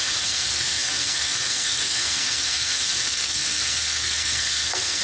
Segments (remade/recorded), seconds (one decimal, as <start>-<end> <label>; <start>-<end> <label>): 0.0-5.0 remade

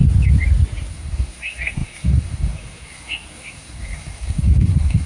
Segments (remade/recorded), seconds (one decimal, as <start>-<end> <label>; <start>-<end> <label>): 0.0-0.9 recorded; 0.9-5.1 remade

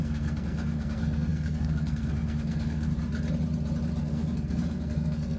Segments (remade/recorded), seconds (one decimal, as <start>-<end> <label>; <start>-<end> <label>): 0.0-3.0 remade; 3.0-4.0 recorded; 4.0-5.4 remade

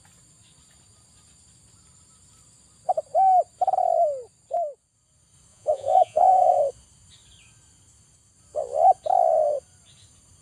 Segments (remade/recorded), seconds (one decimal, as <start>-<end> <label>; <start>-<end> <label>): 0.0-5.5 recorded; 5.5-6.6 remade; 6.6-10.4 recorded

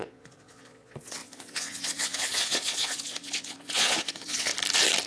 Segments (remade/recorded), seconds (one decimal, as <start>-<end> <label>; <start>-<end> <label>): 0.0-4.5 remade; 4.5-5.1 recorded